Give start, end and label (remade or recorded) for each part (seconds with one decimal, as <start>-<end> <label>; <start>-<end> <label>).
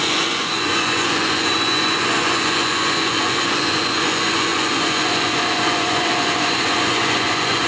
0.0-7.7 remade